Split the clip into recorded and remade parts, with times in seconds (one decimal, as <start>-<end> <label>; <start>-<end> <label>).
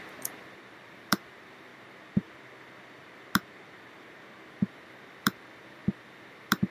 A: 0.0-1.7 remade; 1.7-4.5 recorded; 4.5-6.7 remade